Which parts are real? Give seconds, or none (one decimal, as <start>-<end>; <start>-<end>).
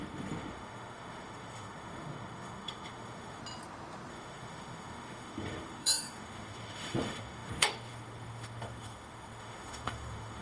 3.4-4.1